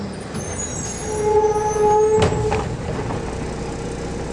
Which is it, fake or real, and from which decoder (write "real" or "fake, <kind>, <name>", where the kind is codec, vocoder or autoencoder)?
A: real